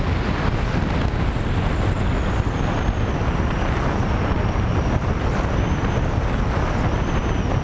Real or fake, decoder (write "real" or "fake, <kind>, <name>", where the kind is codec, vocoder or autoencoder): real